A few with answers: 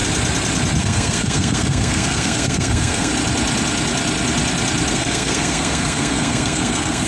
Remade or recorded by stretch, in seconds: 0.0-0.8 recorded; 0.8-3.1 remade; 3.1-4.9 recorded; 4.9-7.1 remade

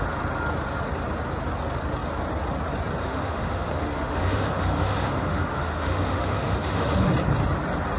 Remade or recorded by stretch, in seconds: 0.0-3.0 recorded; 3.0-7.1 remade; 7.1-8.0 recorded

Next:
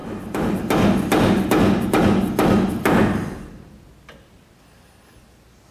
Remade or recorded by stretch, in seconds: 0.0-5.7 recorded

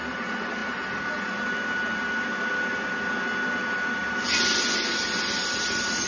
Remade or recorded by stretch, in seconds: 0.0-6.1 recorded

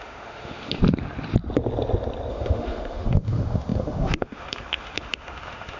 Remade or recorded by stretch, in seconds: 0.0-0.8 remade; 0.8-2.3 recorded; 2.3-5.8 remade

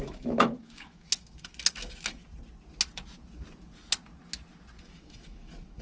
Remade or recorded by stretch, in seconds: 0.0-2.3 remade; 2.3-4.8 recorded; 4.8-5.8 remade

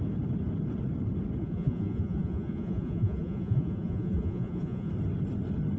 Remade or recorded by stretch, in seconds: 0.0-1.4 recorded; 1.4-4.9 remade; 4.9-5.8 recorded

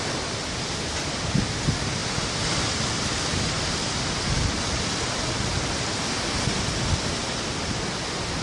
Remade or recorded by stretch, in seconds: 0.0-8.4 recorded